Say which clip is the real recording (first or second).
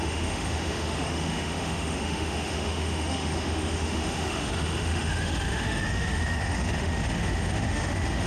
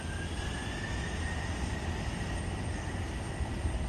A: second